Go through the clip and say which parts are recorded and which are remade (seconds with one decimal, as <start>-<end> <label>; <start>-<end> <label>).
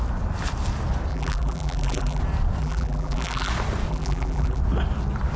0.0-1.1 recorded; 1.1-2.2 remade; 2.2-2.6 recorded; 2.6-3.5 remade; 3.5-3.9 recorded; 3.9-4.6 remade; 4.6-5.4 recorded